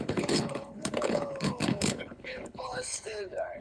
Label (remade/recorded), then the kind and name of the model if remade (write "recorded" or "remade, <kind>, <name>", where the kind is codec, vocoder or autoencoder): remade, codec, HILCodec